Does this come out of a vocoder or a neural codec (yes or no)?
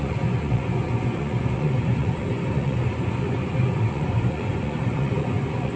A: yes